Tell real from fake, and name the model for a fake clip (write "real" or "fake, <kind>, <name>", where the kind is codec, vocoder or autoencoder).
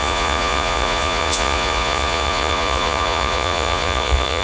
fake, vocoder, Vocos